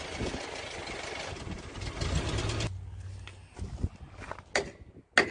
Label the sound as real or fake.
real